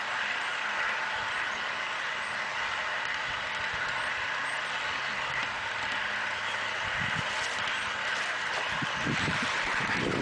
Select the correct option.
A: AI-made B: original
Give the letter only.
B